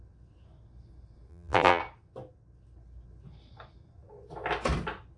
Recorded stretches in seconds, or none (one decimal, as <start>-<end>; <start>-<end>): 0.0-1.3; 1.8-5.2